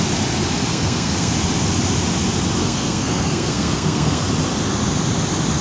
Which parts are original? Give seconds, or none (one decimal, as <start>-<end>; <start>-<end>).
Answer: 0.0-0.7; 1.3-2.6; 4.2-5.6